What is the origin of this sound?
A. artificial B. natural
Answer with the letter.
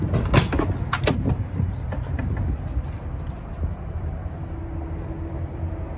B